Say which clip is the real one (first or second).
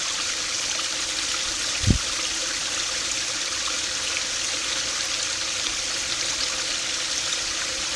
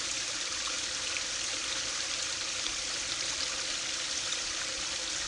first